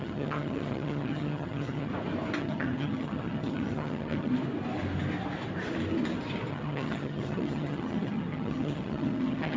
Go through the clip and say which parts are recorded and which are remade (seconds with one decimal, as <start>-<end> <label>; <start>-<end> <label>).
0.0-1.9 remade; 1.9-2.4 recorded; 2.4-4.3 remade; 4.3-6.5 recorded; 6.5-9.6 remade